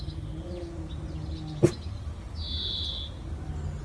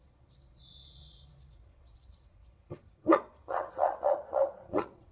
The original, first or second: first